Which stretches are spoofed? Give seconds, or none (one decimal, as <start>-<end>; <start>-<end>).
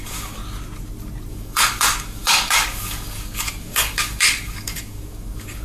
0.0-0.4; 1.3-5.6